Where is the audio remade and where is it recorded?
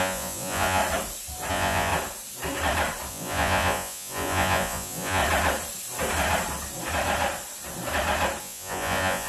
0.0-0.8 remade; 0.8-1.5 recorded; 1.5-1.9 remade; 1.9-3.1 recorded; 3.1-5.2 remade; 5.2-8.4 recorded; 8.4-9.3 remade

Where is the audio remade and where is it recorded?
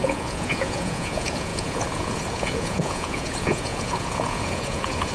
0.0-5.1 remade